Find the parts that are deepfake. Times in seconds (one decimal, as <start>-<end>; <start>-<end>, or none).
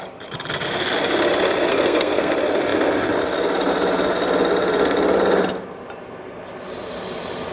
1.7-2.3